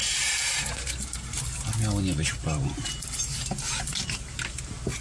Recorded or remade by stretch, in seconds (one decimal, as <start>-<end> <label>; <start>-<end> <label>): 0.0-5.0 recorded